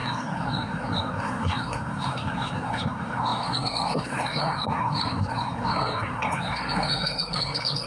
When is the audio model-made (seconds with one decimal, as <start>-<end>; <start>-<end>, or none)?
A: 0.0-7.9